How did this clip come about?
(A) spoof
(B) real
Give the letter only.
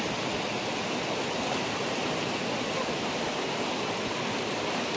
B